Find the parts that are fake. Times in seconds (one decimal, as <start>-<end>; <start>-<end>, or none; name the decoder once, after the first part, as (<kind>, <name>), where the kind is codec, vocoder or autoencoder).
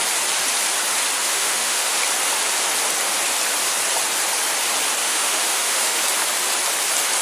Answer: 1.2-2.0 (autoencoder, DAC-VAE); 5.0-6.0